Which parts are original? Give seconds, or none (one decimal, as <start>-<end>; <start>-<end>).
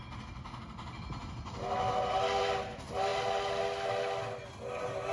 0.0-5.1